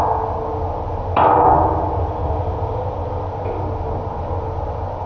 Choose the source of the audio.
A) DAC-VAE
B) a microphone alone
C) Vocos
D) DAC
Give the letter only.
B